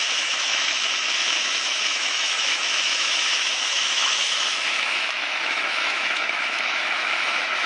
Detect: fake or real fake